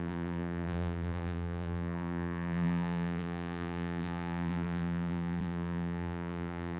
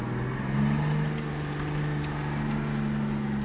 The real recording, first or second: second